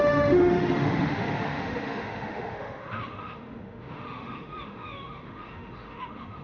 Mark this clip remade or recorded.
remade